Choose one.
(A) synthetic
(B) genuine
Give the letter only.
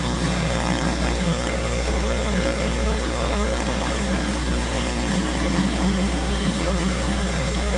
A